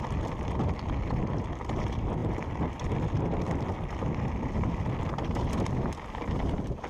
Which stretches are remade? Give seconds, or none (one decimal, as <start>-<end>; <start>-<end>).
none